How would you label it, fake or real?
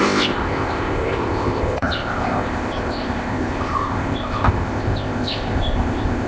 fake